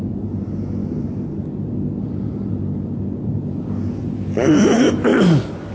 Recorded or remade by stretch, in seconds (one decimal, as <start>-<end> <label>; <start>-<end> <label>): 0.0-5.7 recorded